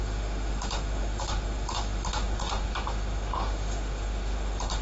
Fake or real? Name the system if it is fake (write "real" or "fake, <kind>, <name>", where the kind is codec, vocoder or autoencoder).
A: fake, autoencoder, DAC-VAE